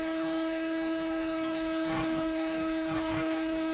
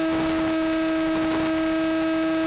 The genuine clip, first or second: second